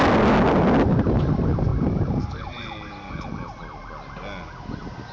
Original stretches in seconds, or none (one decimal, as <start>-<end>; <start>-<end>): 0.0-1.7; 3.1-5.1